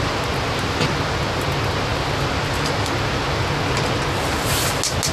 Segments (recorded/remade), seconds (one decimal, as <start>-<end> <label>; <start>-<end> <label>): 0.0-5.1 recorded